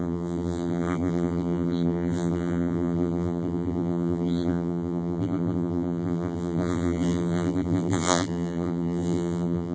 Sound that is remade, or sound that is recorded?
remade